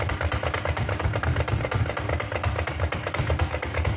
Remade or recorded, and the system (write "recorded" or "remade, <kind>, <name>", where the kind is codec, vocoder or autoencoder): remade, vocoder, BigVGAN v2